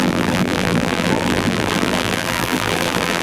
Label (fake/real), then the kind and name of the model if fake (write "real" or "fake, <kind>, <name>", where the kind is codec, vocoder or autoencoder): fake, vocoder, BigVGAN v2